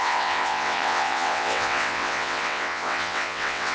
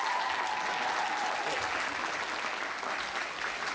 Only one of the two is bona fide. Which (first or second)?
second